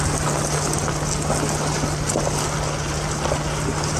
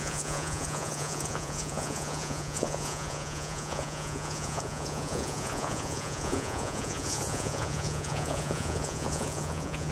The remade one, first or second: second